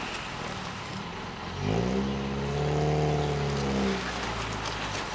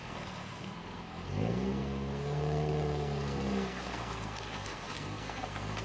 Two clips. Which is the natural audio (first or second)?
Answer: first